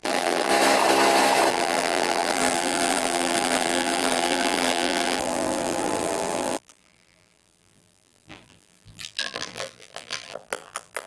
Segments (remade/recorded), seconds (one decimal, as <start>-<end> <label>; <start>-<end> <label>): 0.0-0.5 remade; 0.5-1.5 recorded; 1.5-11.1 remade